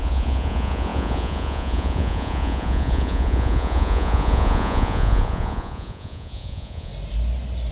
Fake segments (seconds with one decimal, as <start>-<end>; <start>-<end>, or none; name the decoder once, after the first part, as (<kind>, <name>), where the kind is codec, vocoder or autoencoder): 0.0-6.9 (vocoder, Vocos)